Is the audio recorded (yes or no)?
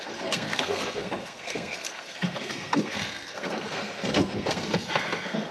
no